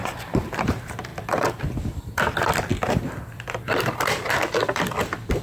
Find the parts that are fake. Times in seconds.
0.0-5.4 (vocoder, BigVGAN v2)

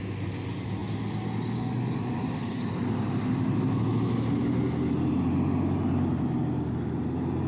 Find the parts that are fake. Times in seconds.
none

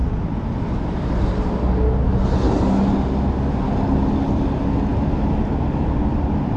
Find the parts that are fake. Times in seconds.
0.0-0.6 (vocoder, BigVGAN v2)

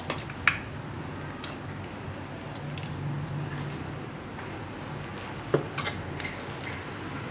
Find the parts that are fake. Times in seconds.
none

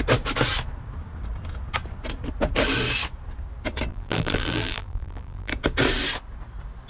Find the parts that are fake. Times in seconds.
3.9-5.5 (vocoder, BigVGAN v2)

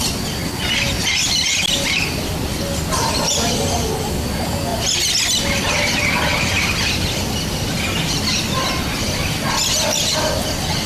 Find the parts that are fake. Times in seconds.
none